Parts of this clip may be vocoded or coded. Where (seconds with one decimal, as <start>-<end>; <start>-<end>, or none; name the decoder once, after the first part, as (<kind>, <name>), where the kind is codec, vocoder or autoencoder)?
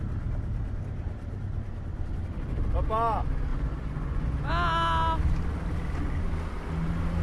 3.5-4.5 (vocoder, Vocos)